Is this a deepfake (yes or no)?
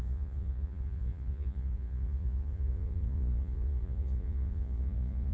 yes